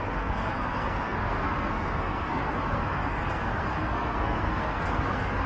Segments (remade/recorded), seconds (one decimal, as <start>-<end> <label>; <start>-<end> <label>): 0.0-5.5 remade